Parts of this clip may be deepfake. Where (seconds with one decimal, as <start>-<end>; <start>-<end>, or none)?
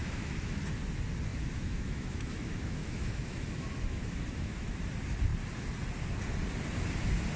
0.0-0.6; 1.3-4.8